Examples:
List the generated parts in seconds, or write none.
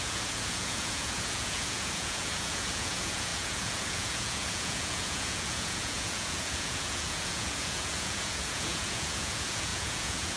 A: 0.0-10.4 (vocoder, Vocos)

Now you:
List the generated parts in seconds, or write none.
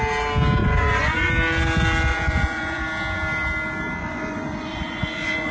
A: 0.6-1.3 (vocoder, Vocos); 2.1-2.8; 4.0-5.5